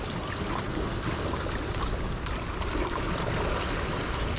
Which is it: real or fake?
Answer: real